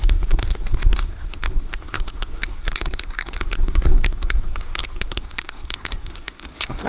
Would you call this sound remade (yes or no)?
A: yes